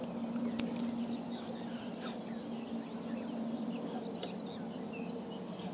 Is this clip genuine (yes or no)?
yes